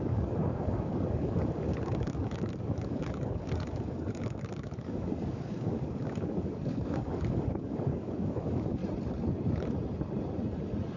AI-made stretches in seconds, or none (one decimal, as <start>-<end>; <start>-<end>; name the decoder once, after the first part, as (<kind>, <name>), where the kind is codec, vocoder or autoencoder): 0.0-8.8 (codec, DAC)